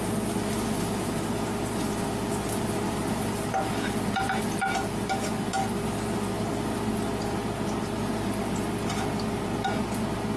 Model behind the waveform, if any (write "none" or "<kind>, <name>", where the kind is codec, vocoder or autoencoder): none